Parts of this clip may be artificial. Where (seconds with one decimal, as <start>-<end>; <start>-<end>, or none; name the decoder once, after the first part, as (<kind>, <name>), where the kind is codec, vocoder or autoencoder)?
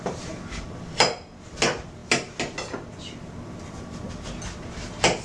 none